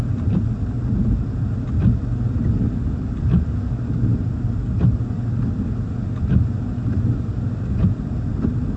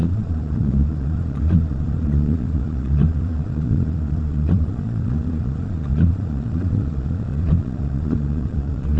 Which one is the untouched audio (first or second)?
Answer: first